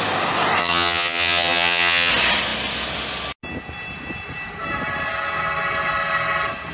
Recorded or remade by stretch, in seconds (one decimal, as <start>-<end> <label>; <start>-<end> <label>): 0.0-0.6 recorded; 0.6-2.1 remade; 2.1-6.7 recorded